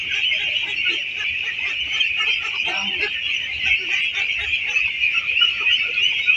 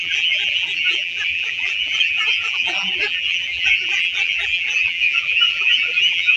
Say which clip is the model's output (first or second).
second